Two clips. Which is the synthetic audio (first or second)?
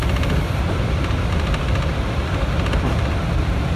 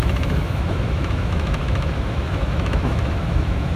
second